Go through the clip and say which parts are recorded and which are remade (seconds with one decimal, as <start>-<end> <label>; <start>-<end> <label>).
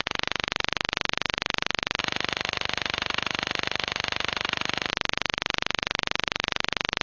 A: 0.0-2.0 recorded; 2.0-4.9 remade; 4.9-7.0 recorded